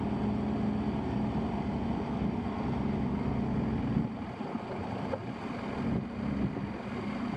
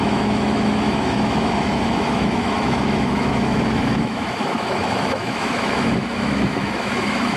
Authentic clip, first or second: first